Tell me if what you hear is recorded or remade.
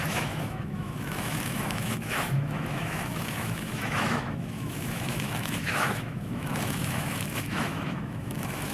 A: remade